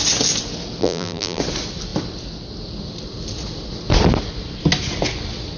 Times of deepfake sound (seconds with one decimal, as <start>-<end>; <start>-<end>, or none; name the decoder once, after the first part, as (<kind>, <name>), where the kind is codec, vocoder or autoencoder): 0.8-1.4 (vocoder, BigVGAN v2)